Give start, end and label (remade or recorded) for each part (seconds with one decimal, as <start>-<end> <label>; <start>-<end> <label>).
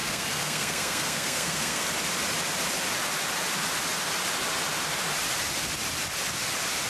0.0-1.9 remade; 1.9-6.9 recorded